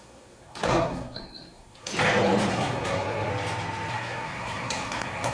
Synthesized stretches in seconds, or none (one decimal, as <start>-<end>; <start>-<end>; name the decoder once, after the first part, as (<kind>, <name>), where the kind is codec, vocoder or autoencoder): 0.0-1.9 (codec, SNAC); 2.5-3.3; 3.9-5.3